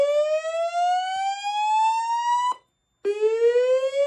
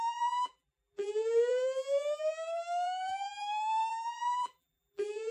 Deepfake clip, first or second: second